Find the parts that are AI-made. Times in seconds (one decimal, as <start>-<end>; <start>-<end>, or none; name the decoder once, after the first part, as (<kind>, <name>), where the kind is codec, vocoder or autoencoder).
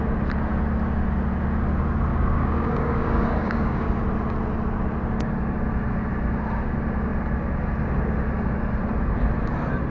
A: 2.1-4.0 (codec, DAC)